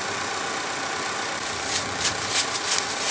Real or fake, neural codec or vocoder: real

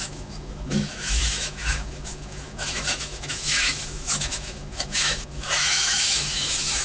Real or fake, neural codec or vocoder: fake, autoencoder, DAC-VAE